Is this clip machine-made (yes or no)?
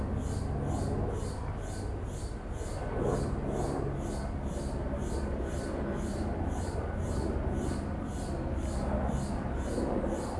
no